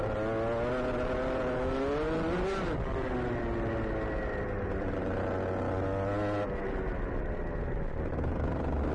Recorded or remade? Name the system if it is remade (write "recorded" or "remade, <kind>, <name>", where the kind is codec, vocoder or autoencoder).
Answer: recorded